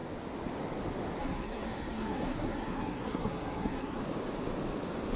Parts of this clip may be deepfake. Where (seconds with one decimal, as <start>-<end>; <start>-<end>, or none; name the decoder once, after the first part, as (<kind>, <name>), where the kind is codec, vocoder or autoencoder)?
1.2-4.0 (codec, SNAC)